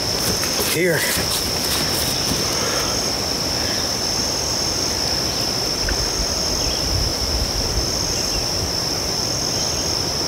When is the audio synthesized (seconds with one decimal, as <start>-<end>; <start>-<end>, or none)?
7.1-7.7